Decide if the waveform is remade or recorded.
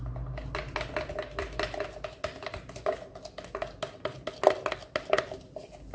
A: recorded